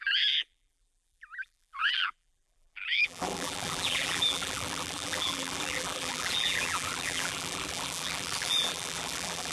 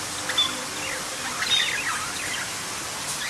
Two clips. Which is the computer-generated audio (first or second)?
first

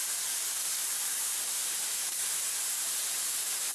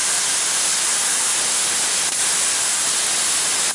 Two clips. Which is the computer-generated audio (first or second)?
first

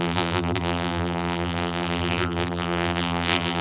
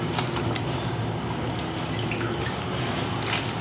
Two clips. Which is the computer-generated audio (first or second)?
first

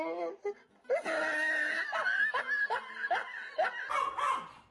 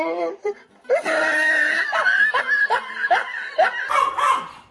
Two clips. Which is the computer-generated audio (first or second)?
second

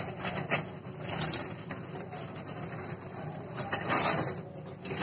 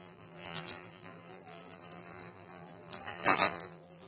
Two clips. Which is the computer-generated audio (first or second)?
second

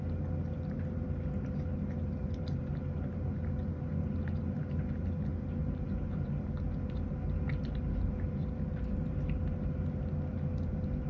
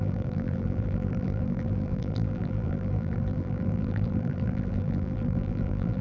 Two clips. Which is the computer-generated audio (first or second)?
second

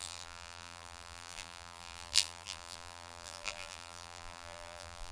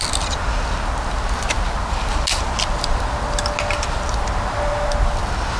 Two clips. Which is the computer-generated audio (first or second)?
first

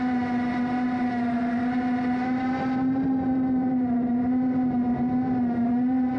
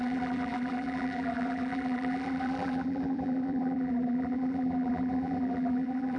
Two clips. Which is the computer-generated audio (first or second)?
second